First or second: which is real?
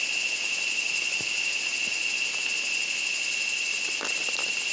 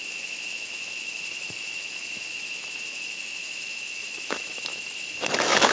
first